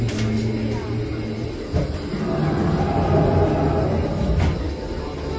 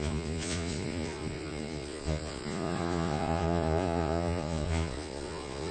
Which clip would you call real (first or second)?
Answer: first